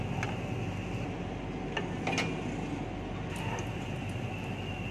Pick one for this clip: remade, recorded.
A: recorded